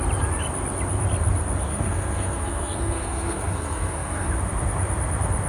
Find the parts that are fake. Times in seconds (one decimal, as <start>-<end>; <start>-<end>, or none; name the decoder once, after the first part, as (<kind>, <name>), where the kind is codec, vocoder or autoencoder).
1.7-4.3 (codec, SNAC)